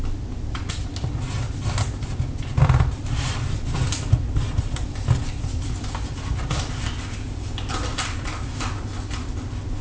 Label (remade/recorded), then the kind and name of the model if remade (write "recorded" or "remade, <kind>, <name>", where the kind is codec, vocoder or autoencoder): recorded